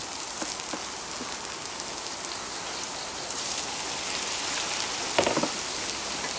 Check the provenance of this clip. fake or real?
real